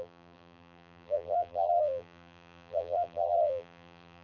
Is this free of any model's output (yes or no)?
no